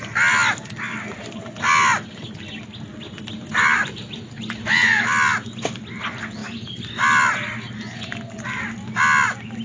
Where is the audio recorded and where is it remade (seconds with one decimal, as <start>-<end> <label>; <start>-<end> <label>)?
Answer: 0.0-9.6 recorded